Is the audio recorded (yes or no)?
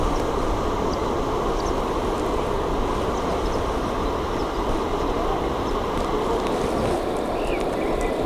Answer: yes